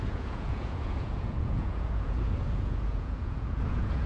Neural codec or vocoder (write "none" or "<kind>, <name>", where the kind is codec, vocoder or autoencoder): vocoder, Vocos